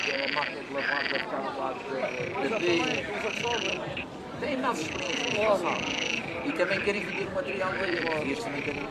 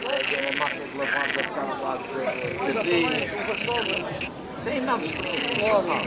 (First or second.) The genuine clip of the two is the second